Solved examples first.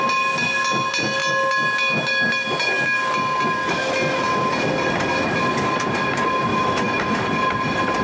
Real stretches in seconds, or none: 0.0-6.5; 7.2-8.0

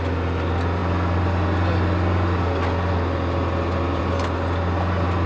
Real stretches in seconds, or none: 0.0-5.3

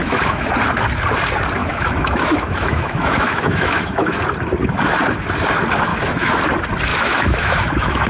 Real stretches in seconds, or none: 0.5-1.6; 4.2-5.9; 6.4-6.9